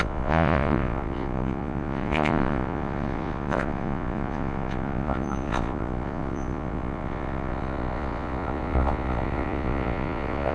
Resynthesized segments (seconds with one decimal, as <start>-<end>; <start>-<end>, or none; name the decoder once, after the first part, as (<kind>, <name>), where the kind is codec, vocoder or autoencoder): 0.0-10.5 (vocoder, Vocos)